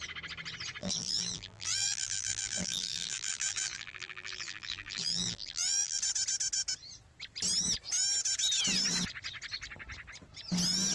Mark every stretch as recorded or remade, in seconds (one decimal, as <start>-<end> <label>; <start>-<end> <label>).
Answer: 0.0-0.8 recorded; 0.8-6.0 remade; 6.0-10.9 recorded